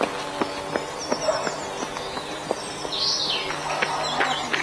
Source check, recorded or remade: recorded